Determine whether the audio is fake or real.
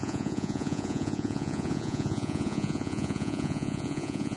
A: fake